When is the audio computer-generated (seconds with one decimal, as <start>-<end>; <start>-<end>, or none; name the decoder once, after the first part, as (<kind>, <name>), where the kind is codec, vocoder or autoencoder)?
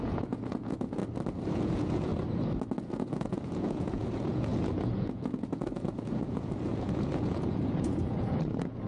0.0-1.0 (vocoder, Vocos); 1.5-2.1; 2.8-8.9